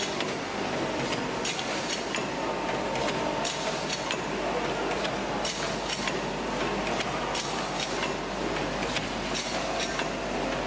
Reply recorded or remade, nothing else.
recorded